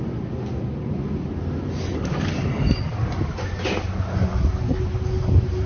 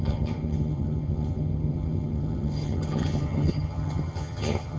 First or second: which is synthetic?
second